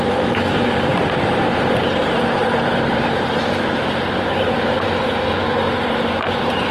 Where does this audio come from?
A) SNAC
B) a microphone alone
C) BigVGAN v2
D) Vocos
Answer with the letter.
C